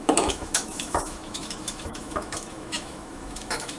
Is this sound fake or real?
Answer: fake